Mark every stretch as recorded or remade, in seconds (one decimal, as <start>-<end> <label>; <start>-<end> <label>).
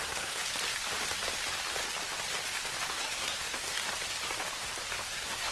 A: 0.0-0.4 remade; 0.4-2.9 recorded; 2.9-3.8 remade; 3.8-5.1 recorded; 5.1-5.5 remade